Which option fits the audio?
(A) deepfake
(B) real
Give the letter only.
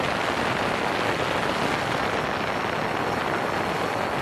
B